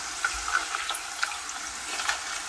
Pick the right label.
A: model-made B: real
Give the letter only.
B